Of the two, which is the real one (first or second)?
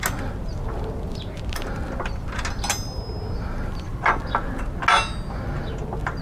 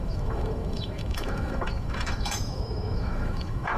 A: first